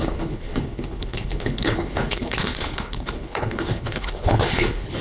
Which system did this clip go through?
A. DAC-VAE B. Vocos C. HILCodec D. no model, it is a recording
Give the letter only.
C